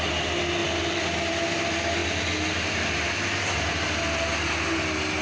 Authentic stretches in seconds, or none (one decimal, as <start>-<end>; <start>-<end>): 0.0-5.2